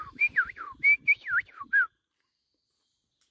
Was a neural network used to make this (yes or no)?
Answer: no